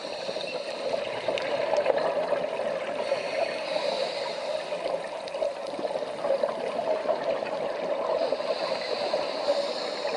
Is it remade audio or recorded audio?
recorded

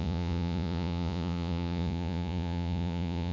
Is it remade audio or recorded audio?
remade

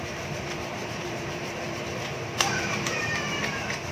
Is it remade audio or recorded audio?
remade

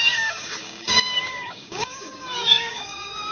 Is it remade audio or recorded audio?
remade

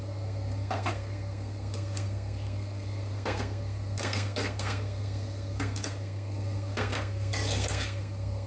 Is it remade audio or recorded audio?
remade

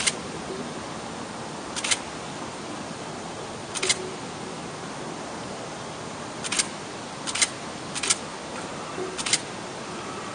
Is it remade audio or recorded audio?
recorded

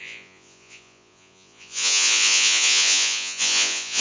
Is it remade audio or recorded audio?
remade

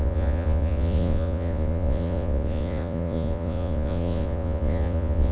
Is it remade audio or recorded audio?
remade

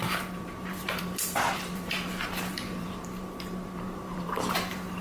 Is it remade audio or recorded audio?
remade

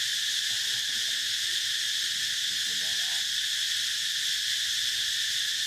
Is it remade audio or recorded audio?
recorded